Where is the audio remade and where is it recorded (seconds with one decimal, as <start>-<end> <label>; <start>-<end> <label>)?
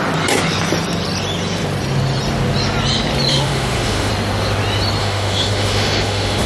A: 0.0-3.3 recorded; 3.3-4.1 remade; 4.1-5.0 recorded; 5.0-6.5 remade